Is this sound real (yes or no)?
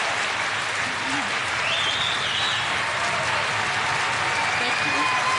yes